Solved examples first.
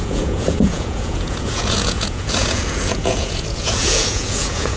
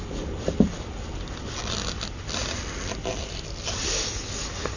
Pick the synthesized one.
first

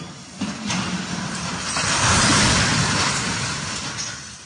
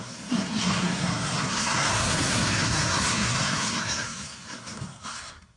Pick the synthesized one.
second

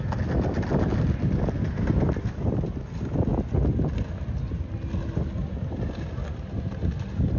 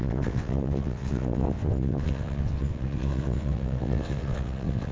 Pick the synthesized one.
second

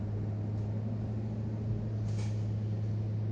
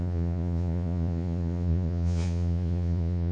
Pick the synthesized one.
second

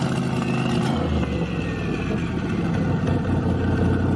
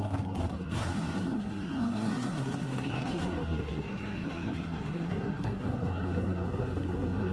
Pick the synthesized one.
second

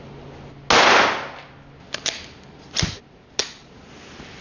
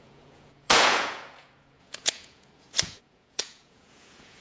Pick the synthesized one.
second